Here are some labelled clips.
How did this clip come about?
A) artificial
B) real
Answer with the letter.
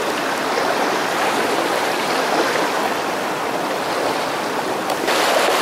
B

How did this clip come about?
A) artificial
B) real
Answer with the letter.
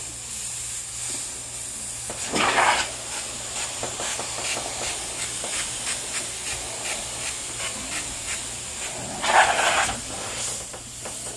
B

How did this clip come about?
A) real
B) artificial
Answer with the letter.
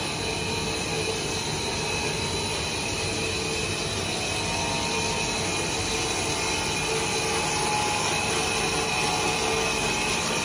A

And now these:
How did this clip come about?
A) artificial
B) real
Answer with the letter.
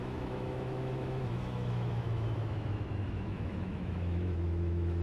A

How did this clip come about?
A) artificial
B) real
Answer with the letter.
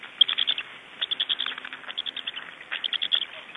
B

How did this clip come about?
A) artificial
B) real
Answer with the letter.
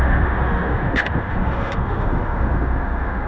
A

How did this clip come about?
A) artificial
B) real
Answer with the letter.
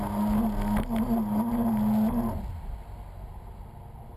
B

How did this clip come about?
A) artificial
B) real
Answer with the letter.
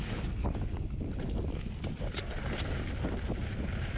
B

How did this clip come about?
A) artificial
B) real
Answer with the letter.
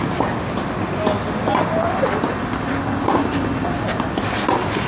B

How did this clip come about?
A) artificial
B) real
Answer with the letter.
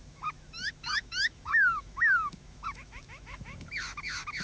A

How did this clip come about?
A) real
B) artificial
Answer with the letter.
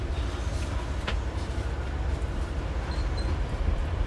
A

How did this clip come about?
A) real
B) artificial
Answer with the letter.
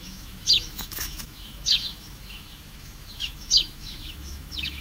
B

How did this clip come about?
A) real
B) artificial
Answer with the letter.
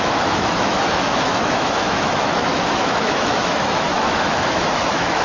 B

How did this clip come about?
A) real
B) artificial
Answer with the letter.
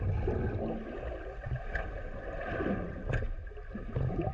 A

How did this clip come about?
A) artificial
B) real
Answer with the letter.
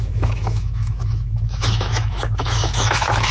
A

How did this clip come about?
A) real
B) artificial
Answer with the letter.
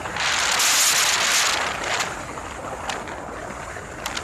A